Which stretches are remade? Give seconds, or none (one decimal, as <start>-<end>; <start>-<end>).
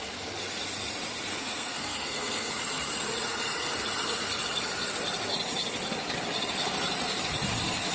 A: 1.3-2.5